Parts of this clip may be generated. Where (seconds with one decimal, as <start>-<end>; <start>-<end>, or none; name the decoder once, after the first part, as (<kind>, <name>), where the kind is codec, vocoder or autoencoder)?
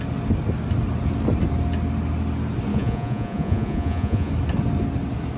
2.7-4.3 (vocoder, Vocos)